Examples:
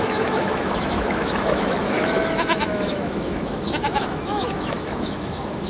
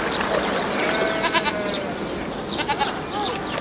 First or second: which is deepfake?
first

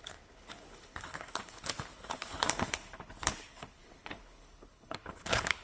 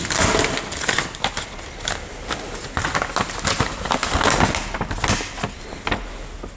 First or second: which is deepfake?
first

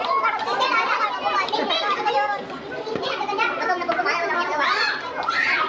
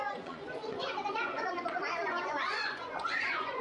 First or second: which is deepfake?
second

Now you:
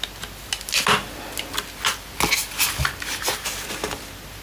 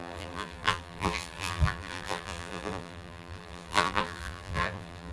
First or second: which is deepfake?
second